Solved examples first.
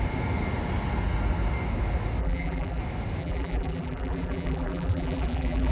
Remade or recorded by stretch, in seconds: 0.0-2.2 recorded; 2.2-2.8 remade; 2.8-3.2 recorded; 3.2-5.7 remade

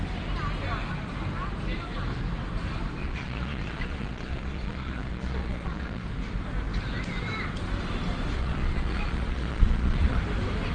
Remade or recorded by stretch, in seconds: 0.0-3.0 recorded; 3.0-6.0 remade; 6.0-8.4 recorded; 8.4-10.2 remade; 10.2-10.7 recorded

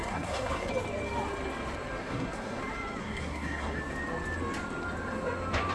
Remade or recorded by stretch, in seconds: 0.0-0.7 remade; 0.7-2.0 recorded; 2.0-2.6 remade; 2.6-3.0 recorded; 3.0-3.8 remade; 3.8-5.7 recorded

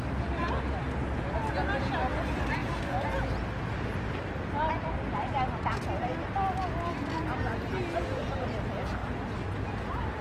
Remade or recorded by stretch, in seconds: 0.0-10.2 recorded

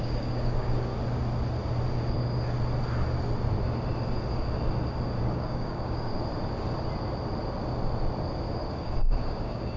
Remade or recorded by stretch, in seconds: 0.0-0.9 remade; 0.9-5.2 recorded; 5.2-6.1 remade; 6.1-8.7 recorded; 8.7-9.8 remade

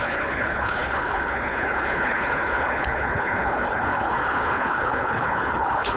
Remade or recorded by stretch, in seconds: 0.0-6.0 remade

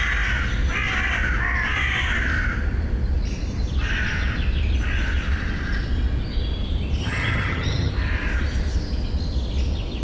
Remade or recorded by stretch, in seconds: 0.0-7.0 recorded; 7.0-7.9 remade; 7.9-10.0 recorded

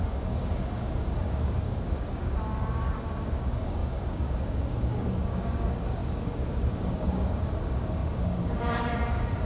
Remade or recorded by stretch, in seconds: 0.0-9.4 remade